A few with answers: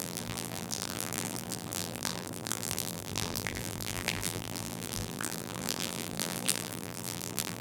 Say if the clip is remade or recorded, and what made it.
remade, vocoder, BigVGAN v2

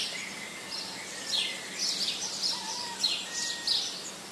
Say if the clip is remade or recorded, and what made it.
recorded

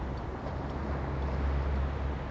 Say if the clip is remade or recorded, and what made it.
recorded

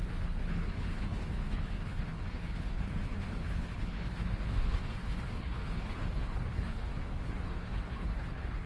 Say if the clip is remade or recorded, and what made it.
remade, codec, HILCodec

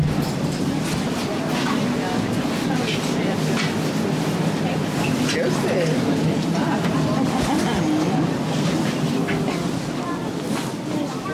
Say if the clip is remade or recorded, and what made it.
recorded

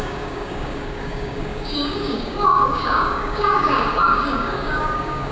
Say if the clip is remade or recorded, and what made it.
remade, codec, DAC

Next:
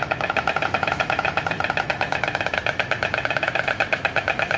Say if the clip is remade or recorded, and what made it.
remade, autoencoder, DAC-VAE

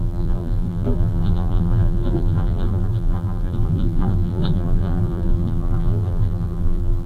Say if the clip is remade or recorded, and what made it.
remade, vocoder, BigVGAN v2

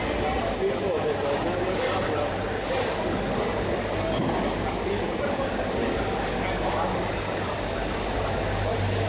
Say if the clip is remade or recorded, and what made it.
recorded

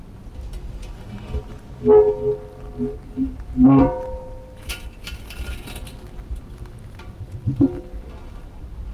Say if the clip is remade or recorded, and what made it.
recorded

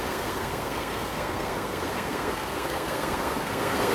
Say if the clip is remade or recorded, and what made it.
remade, codec, SNAC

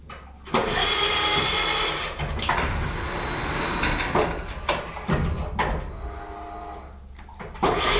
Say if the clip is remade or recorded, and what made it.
recorded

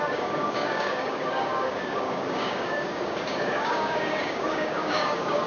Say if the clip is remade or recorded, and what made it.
remade, codec, DAC